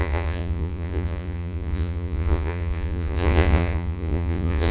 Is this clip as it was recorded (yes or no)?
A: no